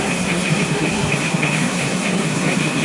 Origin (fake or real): fake